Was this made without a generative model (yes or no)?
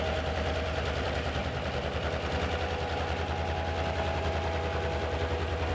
yes